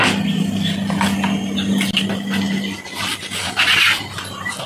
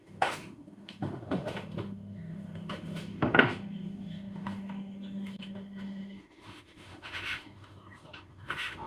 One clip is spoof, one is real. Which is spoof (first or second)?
second